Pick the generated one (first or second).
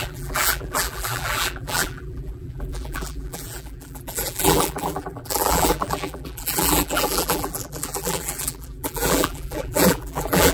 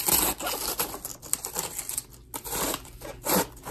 first